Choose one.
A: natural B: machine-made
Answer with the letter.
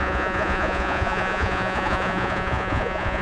B